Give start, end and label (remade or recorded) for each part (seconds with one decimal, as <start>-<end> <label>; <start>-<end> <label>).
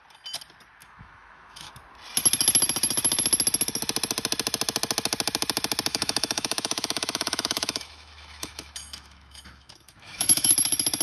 0.0-0.8 recorded; 0.8-1.7 remade; 1.7-5.9 recorded; 5.9-10.5 remade; 10.5-11.0 recorded